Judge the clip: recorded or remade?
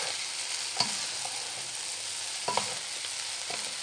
recorded